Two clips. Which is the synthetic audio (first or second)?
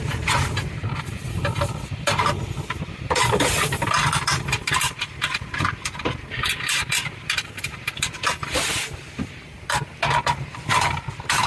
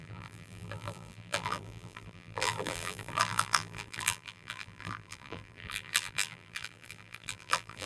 second